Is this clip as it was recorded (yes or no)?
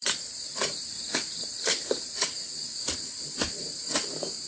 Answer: no